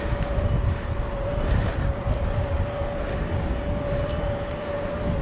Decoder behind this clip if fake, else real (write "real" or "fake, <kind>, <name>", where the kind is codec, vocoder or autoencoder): real